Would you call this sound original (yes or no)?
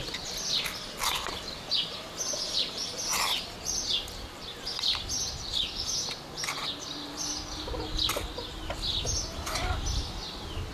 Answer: yes